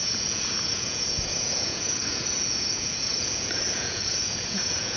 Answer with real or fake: fake